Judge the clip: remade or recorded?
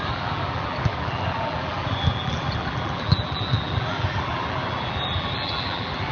remade